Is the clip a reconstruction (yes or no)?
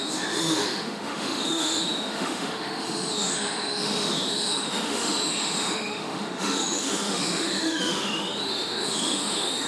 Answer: yes